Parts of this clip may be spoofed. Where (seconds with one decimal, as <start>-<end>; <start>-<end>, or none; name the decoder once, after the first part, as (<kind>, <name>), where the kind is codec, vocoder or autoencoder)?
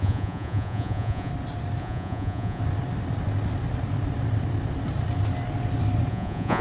0.0-1.3 (vocoder, Vocos); 1.8-2.6; 6.1-6.6